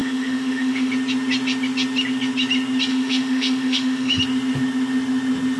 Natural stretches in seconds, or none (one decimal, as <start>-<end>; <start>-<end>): 0.9-2.9; 4.2-5.6